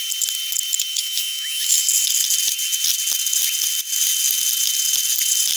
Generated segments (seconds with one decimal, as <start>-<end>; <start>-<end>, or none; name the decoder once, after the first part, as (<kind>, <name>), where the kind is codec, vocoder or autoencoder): 0.9-1.8 (autoencoder, DAC-VAE)